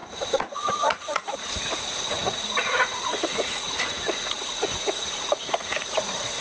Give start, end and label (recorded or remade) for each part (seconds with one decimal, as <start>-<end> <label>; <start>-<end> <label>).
0.0-6.4 remade